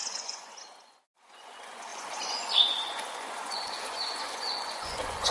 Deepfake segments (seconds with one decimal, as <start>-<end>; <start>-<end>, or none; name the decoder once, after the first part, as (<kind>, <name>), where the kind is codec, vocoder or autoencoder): 0.0-5.3 (vocoder, Vocos)